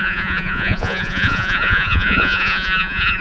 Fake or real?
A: fake